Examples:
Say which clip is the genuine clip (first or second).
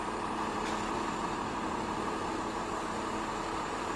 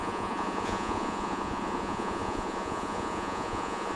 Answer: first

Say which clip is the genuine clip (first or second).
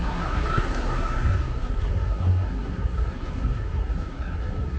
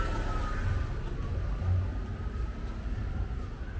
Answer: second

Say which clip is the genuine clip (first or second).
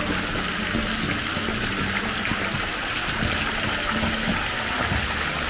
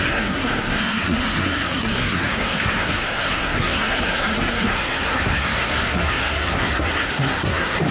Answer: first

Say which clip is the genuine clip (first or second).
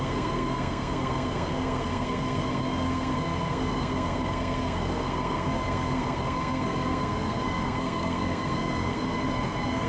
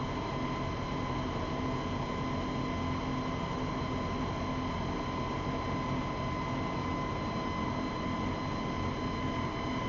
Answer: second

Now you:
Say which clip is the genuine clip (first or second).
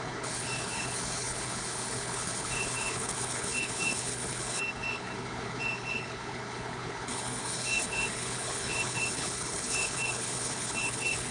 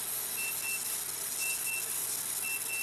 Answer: second